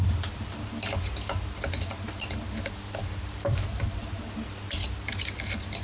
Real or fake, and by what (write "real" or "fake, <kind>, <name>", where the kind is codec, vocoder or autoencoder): real